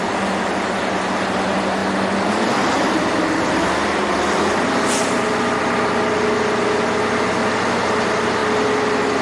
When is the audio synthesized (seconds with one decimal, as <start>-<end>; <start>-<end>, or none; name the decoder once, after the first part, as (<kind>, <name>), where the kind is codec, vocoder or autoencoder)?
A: none